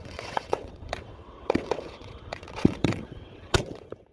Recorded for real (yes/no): no